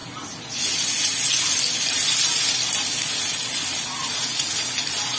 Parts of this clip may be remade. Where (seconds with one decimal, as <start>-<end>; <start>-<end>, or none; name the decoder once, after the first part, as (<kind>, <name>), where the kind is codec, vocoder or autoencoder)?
none